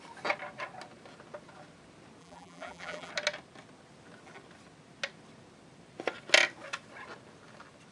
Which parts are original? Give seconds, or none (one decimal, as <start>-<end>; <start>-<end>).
0.0-2.2; 3.1-7.9